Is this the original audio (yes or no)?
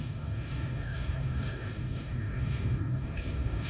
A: no